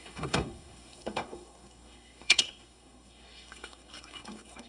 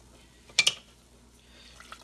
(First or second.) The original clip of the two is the second